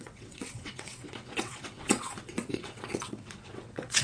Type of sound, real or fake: fake